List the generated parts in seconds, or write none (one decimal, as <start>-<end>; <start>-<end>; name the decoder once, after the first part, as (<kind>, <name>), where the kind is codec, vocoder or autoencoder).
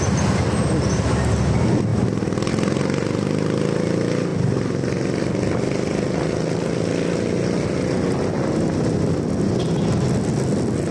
none